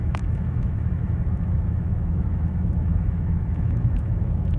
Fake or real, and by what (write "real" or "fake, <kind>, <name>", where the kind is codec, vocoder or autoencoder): fake, autoencoder, DAC-VAE